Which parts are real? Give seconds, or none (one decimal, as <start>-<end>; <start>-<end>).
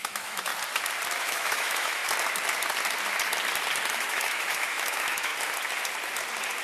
0.5-1.2; 2.0-3.9; 5.3-6.6